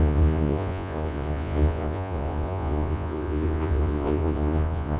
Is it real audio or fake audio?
fake